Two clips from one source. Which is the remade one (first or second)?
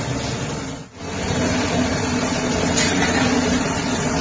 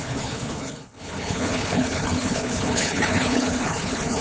second